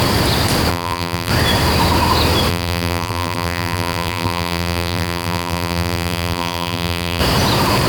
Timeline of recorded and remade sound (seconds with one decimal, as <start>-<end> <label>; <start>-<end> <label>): 0.0-0.7 recorded; 0.7-1.3 remade; 1.3-2.5 recorded; 2.5-7.2 remade; 7.2-7.9 recorded